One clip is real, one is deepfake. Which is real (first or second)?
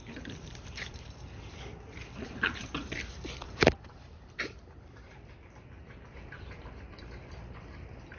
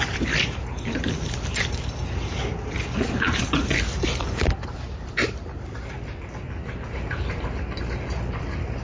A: second